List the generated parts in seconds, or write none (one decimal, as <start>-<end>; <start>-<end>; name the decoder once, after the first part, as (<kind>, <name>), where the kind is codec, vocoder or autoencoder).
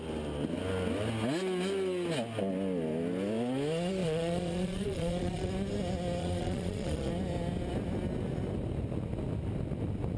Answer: 4.0-5.5 (vocoder, Vocos); 6.2-7.1